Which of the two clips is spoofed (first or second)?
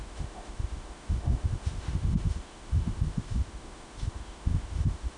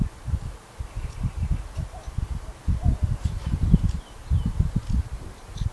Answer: first